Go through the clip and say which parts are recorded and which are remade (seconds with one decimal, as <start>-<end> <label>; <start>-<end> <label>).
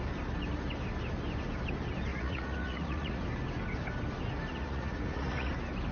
0.0-2.1 recorded; 2.1-3.2 remade; 3.2-4.5 recorded; 4.5-5.5 remade; 5.5-5.9 recorded